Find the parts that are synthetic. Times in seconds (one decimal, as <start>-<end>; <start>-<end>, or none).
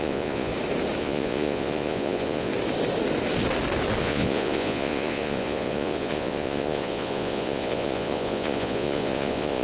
0.0-0.5; 1.0-2.5; 4.0-9.6